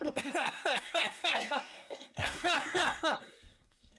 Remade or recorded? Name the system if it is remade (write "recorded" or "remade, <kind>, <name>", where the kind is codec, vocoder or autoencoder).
remade, codec, SNAC